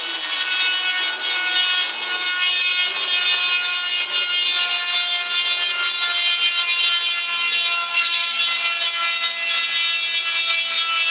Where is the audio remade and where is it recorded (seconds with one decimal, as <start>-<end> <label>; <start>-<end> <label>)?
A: 0.0-7.9 recorded; 7.9-8.4 remade; 8.4-11.1 recorded